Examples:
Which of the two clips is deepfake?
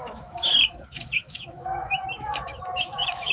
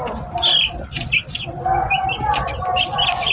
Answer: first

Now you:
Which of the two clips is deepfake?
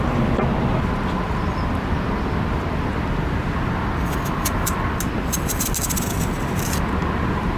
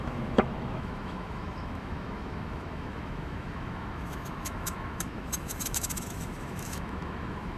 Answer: second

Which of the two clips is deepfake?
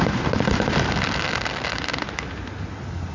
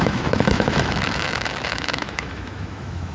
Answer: second